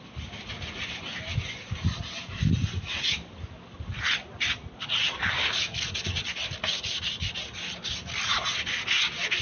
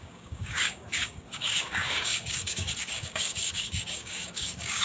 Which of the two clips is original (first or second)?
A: first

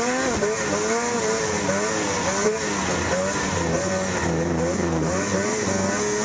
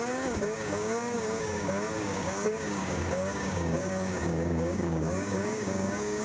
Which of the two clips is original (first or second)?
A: first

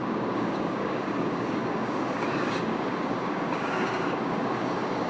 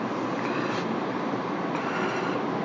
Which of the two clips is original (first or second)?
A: second